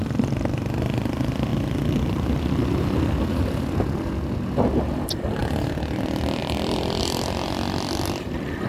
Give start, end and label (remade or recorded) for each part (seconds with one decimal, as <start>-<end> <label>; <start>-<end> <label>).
0.0-1.5 recorded; 1.5-3.2 remade; 3.2-6.4 recorded; 6.4-7.0 remade; 7.0-8.7 recorded